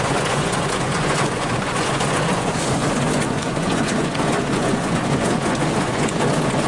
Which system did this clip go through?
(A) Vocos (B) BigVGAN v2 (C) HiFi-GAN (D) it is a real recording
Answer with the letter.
A